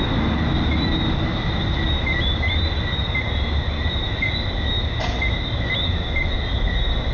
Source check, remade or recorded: recorded